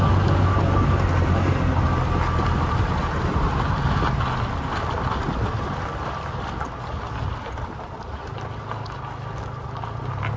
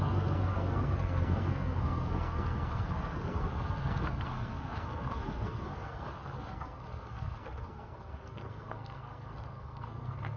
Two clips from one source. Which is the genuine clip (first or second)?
first